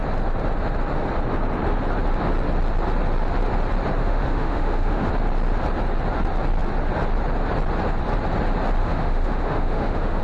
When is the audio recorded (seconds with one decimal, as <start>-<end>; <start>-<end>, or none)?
0.0-4.0; 5.1-8.8